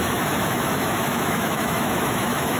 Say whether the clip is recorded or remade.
remade